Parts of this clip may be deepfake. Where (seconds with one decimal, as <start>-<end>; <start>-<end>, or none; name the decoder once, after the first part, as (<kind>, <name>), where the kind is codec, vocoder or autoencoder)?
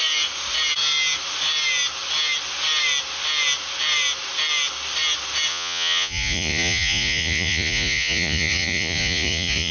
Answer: 5.5-9.7 (vocoder, Vocos)